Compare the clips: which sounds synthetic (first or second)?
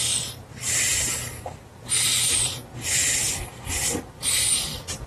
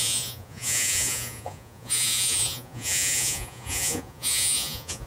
second